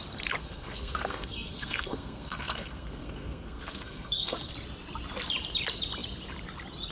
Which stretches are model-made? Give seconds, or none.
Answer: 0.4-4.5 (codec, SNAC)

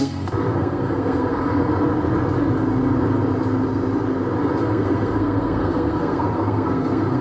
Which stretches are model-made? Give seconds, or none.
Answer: 0.0-1.7 (codec, SNAC); 4.6-7.2